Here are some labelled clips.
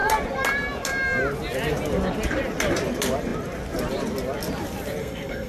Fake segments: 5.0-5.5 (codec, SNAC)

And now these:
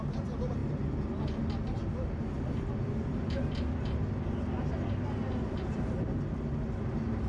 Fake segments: none

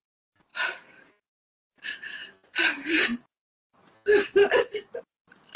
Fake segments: none

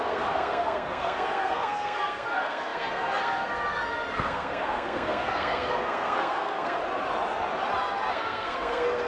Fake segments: 0.0-6.8 (codec, SNAC); 8.1-9.1

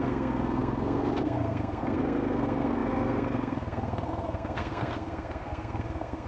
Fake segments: 0.0-6.3 (codec, SNAC)

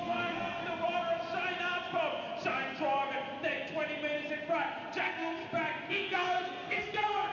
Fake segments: 0.0-0.6 (codec, SNAC); 5.0-5.4; 5.9-7.3

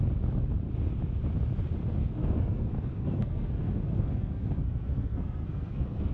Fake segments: 2.0-6.1 (codec, SNAC)